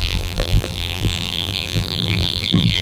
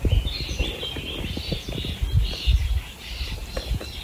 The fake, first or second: first